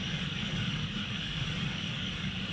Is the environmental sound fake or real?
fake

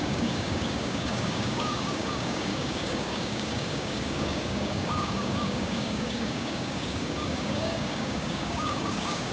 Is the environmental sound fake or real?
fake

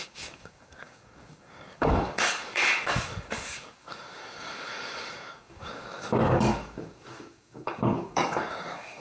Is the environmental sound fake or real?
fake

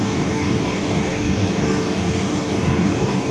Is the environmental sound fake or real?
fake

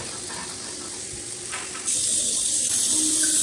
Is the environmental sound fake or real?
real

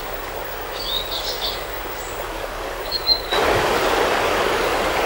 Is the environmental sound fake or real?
fake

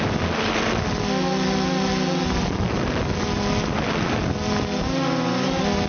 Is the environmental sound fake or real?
real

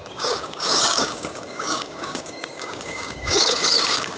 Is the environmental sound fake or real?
fake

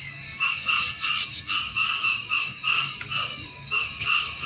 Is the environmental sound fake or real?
fake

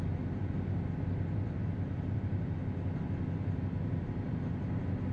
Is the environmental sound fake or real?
real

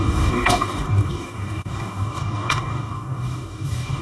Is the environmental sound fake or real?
fake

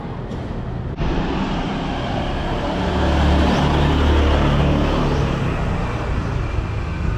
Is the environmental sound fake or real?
real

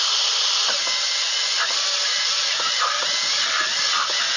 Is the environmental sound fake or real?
real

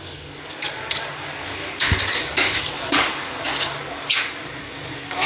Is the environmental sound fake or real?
fake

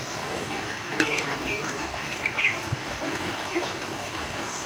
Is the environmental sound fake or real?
fake